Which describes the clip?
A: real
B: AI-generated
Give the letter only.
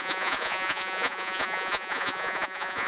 B